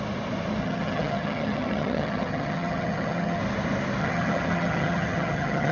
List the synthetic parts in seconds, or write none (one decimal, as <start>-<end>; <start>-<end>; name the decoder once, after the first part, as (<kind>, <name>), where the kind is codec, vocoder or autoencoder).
0.6-3.4 (vocoder, HiFi-GAN); 4.0-5.7